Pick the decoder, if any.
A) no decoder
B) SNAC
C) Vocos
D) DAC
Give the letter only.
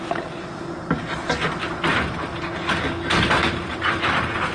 A